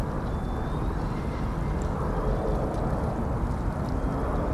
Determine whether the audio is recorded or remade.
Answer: recorded